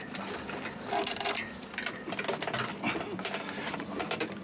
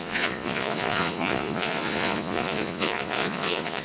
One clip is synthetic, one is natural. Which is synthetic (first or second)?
second